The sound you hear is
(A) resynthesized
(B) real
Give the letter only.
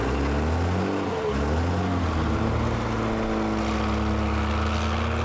B